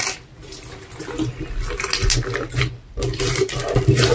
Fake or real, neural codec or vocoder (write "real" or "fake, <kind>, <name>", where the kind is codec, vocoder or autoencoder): real